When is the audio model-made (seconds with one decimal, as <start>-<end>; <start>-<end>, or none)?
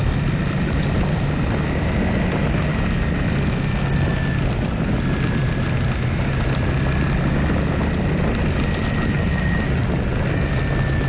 none